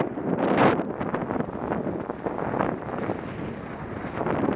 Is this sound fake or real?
real